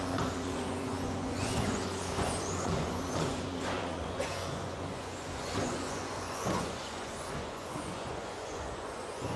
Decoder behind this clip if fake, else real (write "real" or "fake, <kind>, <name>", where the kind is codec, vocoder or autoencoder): fake, vocoder, Vocos